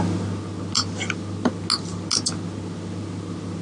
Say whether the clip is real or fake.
real